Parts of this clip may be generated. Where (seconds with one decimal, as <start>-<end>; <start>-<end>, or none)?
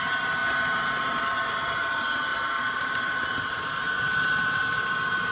none